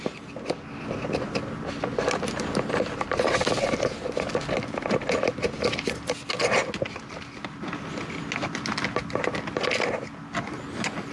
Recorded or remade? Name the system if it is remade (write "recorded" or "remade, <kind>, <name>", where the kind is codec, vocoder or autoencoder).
recorded